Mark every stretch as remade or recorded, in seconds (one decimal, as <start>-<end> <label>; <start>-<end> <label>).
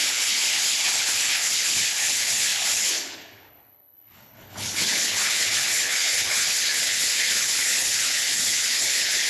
0.0-9.3 remade